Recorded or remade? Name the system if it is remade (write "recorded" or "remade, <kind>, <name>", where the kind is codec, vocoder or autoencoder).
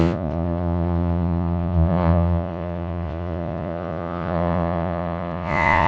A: remade, vocoder, Vocos